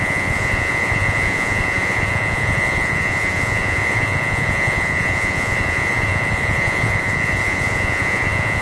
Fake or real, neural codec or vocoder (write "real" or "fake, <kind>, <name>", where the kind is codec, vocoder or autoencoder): fake, vocoder, Vocos